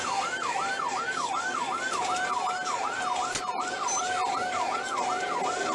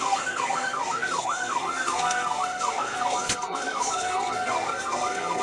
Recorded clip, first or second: first